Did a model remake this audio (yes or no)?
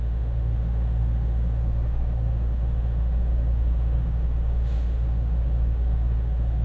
yes